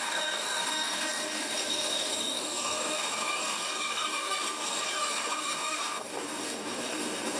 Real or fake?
fake